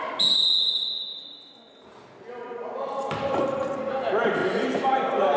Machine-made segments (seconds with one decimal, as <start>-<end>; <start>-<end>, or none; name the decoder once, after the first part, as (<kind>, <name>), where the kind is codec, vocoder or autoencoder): none